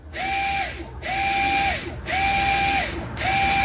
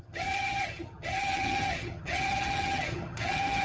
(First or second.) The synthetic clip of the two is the second